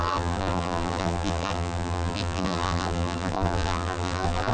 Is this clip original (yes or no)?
no